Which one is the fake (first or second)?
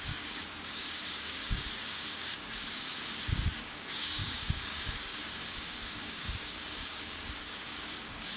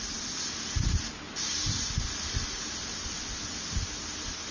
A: first